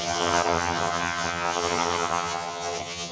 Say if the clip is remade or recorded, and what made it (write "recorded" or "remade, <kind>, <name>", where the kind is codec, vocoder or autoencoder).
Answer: remade, vocoder, HiFi-GAN